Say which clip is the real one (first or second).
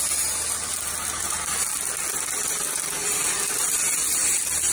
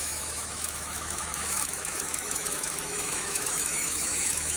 first